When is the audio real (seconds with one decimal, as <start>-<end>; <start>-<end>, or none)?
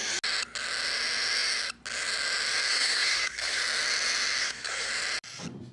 0.0-2.7; 3.6-4.4; 4.9-5.7